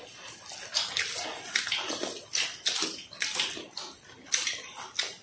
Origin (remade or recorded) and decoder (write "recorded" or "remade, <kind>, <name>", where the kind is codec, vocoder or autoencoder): recorded